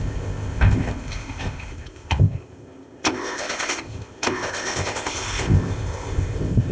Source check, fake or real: fake